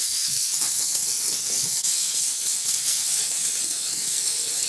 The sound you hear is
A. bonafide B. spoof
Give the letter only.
B